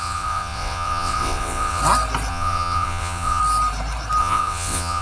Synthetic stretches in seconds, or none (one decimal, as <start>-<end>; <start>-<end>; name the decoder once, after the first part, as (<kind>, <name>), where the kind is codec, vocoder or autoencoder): 0.0-1.8 (vocoder, WaveNeXt); 2.3-3.4; 4.2-5.0